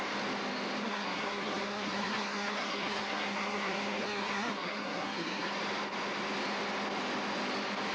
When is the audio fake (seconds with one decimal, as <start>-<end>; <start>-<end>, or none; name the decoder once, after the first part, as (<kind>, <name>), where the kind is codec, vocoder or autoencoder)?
0.8-5.5 (codec, SNAC)